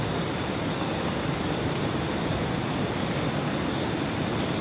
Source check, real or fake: real